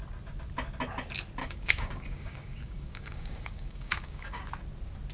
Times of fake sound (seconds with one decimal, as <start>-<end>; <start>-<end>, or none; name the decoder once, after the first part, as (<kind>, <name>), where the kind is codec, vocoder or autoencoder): 1.4-4.4 (codec, DAC)